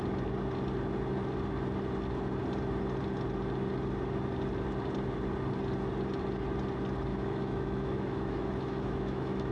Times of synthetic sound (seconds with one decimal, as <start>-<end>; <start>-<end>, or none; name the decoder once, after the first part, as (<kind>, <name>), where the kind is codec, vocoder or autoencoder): 7.1-9.5 (autoencoder, DAC-VAE)